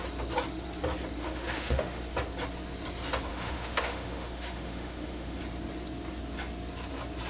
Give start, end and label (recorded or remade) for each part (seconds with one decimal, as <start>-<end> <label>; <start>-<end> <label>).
0.0-1.2 recorded; 1.2-2.0 remade; 2.0-3.3 recorded; 3.3-5.4 remade; 5.4-7.3 recorded